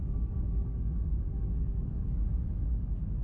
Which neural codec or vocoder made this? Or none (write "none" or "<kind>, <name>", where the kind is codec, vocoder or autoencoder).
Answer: codec, DAC